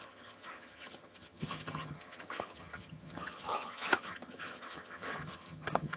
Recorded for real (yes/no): no